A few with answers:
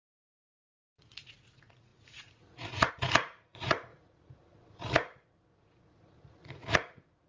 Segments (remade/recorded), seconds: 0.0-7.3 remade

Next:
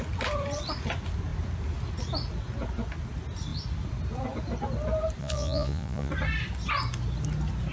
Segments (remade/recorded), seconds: 0.0-5.2 recorded; 5.2-6.1 remade; 6.1-7.7 recorded